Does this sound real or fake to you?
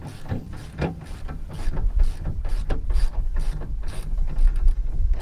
real